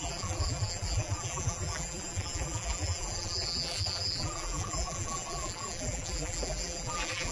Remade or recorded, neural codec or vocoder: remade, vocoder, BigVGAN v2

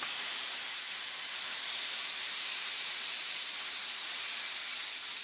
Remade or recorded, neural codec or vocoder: remade, vocoder, BigVGAN v2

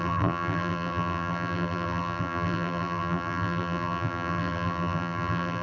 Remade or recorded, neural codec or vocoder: remade, vocoder, BigVGAN v2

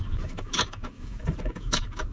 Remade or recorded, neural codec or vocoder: remade, codec, DAC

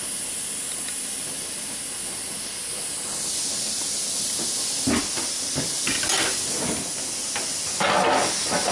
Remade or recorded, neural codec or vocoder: recorded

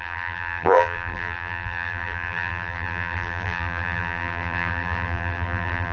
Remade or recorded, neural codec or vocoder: remade, vocoder, BigVGAN v2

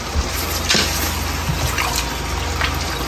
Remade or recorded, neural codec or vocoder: recorded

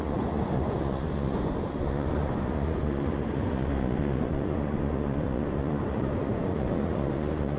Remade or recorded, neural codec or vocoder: remade, vocoder, Vocos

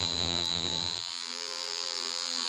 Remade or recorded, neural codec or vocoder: remade, vocoder, BigVGAN v2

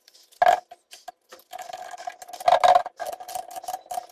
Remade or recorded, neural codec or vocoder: recorded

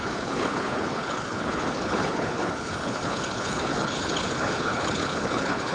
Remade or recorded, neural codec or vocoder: remade, codec, HILCodec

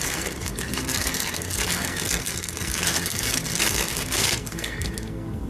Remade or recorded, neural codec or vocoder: remade, codec, SNAC